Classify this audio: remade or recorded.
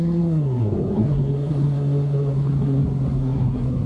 remade